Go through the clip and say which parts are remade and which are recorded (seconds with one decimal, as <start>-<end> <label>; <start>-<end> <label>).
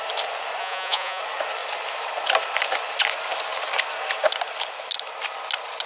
0.0-0.6 recorded; 0.6-1.2 remade; 1.2-5.9 recorded